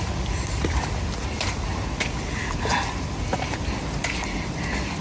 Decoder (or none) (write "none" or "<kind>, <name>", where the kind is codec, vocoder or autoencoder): none